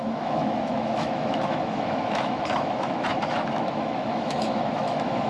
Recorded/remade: remade